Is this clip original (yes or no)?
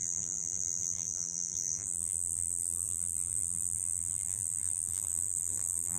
no